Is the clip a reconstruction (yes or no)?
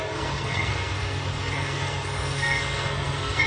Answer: yes